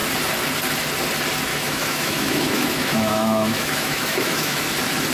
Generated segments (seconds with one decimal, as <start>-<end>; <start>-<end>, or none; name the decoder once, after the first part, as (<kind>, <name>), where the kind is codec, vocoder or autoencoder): 1.5-4.6 (autoencoder, DAC-VAE)